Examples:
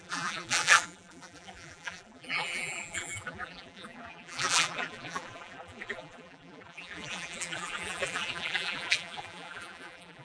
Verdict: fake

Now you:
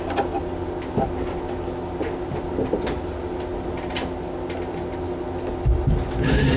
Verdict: real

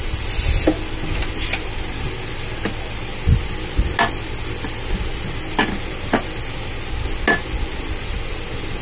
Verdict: real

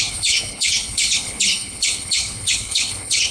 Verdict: fake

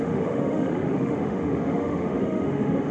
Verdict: fake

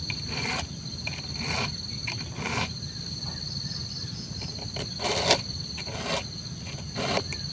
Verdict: real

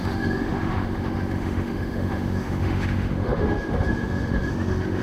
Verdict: fake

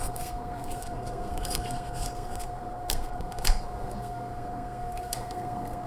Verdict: fake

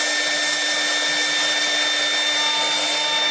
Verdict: real